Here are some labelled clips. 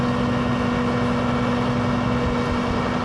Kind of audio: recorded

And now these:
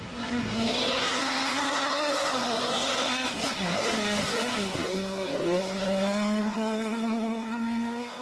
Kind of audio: remade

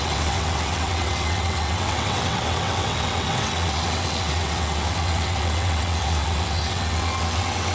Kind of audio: remade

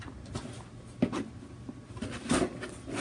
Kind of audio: recorded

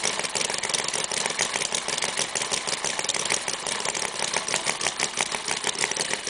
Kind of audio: recorded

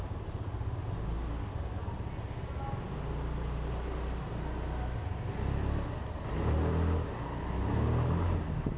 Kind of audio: recorded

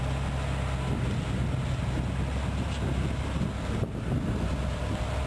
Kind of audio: recorded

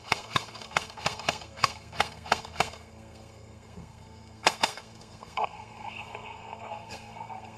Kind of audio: remade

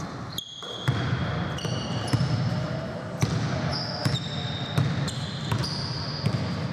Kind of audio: recorded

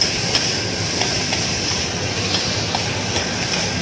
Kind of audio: recorded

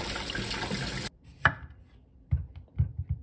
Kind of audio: recorded